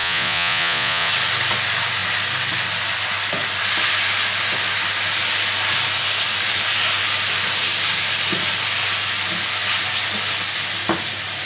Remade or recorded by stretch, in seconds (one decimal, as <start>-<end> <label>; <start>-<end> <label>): 0.0-1.1 remade; 1.1-11.5 recorded

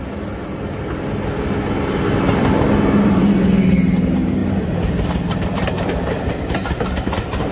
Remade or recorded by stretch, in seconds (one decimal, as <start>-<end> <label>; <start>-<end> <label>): 0.0-4.4 recorded; 4.4-6.3 remade; 6.3-7.5 recorded